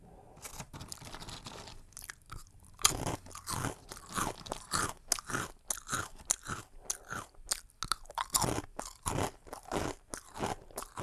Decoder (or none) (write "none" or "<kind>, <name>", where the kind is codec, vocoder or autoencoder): none